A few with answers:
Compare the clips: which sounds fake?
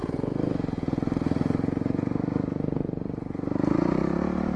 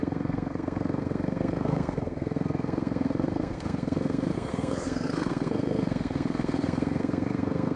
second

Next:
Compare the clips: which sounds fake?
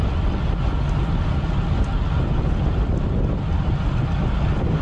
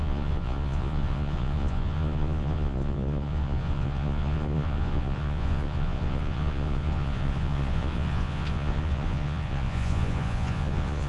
second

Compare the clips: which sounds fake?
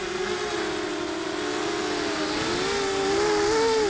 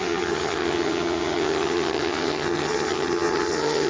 second